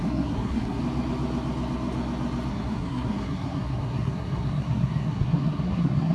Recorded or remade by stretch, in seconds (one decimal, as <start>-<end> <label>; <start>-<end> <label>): 0.0-0.8 remade; 0.8-2.5 recorded; 2.5-6.1 remade